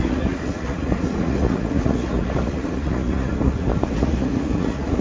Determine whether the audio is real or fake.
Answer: fake